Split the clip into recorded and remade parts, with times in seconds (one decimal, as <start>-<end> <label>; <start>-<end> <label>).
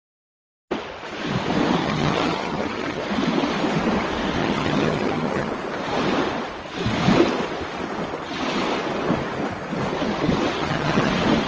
0.0-1.8 recorded; 1.8-3.0 remade; 3.0-4.4 recorded; 4.4-5.5 remade; 5.5-10.6 recorded; 10.6-11.1 remade; 11.1-11.5 recorded